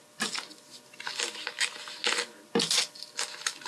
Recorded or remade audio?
recorded